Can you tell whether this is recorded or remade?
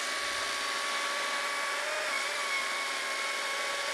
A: recorded